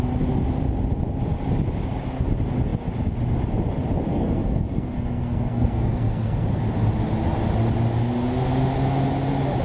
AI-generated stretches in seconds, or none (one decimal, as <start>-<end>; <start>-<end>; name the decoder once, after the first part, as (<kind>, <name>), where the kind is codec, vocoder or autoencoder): 4.1-6.6 (codec, SNAC)